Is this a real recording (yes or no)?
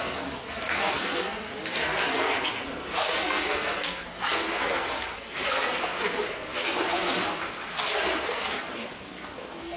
no